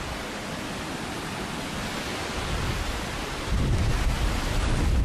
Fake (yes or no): no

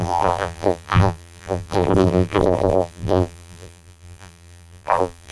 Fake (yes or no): yes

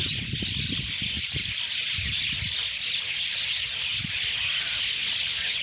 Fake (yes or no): no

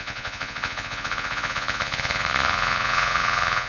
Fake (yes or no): yes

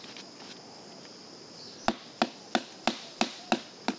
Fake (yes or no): no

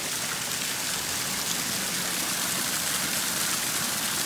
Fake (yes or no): no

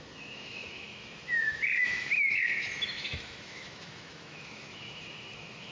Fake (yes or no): yes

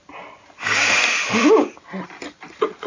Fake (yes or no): no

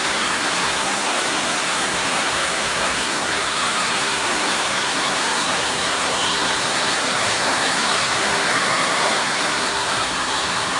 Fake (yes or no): yes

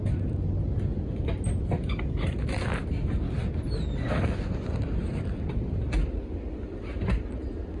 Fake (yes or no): no